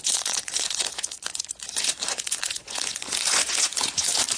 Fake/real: fake